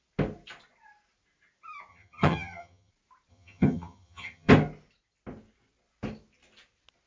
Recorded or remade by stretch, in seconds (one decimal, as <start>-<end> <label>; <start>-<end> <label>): 0.0-1.9 recorded; 1.9-2.9 remade; 2.9-3.3 recorded; 3.3-4.5 remade; 4.5-7.1 recorded